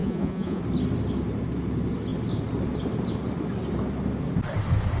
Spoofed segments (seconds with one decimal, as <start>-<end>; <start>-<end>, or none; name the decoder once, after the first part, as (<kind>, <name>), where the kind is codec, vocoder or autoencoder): 0.0-0.6 (vocoder, Vocos)